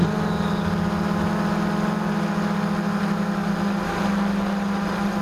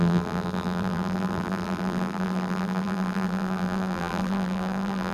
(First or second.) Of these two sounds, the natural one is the first